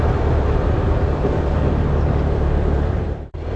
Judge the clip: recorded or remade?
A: remade